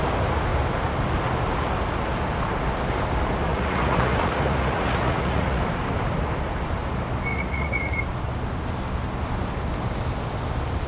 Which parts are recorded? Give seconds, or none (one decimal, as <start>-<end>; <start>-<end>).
0.0-3.5; 5.6-7.3; 8.0-10.9